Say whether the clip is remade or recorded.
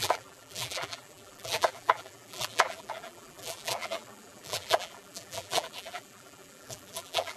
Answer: remade